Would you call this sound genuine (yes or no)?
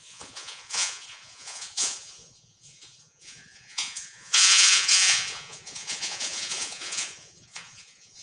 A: no